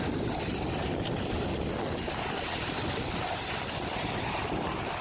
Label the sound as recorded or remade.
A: recorded